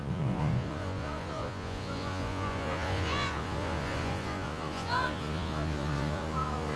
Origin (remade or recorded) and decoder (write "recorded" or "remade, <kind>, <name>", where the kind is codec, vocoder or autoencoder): remade, vocoder, Vocos